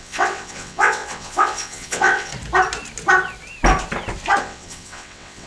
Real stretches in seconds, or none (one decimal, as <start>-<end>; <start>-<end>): 2.3-4.4